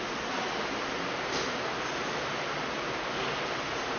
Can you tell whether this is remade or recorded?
recorded